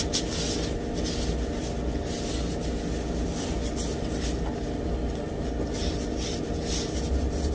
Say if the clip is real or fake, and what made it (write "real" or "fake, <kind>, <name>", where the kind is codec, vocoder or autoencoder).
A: real